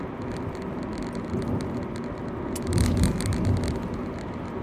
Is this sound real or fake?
real